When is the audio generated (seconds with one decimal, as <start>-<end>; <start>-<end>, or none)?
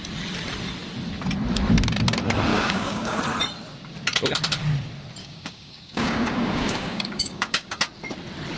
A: 2.5-3.2; 5.2-7.8